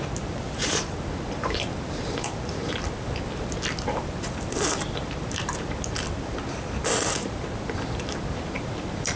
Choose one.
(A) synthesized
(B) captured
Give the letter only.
A